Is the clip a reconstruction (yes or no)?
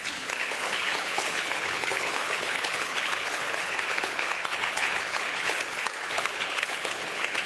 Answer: yes